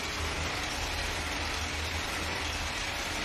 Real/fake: real